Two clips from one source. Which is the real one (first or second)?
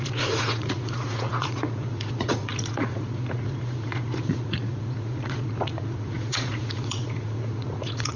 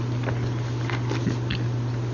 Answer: second